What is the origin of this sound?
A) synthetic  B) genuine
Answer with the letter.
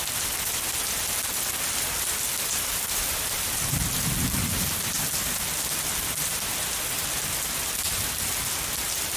B